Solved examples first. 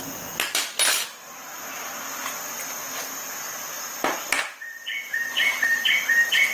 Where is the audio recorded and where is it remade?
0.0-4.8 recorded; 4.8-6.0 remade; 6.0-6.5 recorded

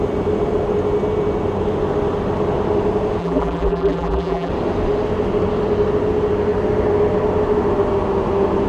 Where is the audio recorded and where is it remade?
0.0-3.2 recorded; 3.2-4.5 remade; 4.5-8.7 recorded

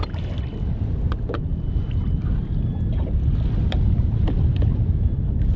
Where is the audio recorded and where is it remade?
0.0-1.5 recorded; 1.5-4.9 remade; 4.9-5.6 recorded

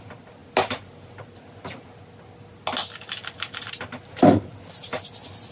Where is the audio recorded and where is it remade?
0.0-5.5 recorded

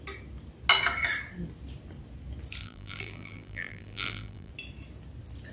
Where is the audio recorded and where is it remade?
0.0-2.6 recorded; 2.6-4.5 remade; 4.5-5.5 recorded

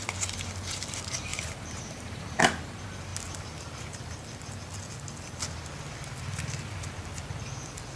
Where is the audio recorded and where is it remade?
0.0-1.3 recorded; 1.3-2.4 remade; 2.4-8.0 recorded

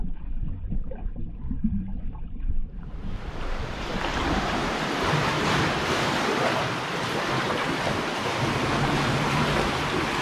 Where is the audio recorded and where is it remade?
0.0-3.0 recorded; 3.0-7.5 remade; 7.5-10.2 recorded